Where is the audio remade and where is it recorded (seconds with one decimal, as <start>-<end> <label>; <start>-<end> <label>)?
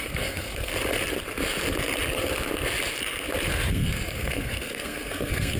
0.0-0.7 remade; 0.7-3.7 recorded; 3.7-5.6 remade